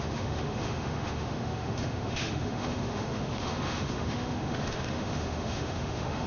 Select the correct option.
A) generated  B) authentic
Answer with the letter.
A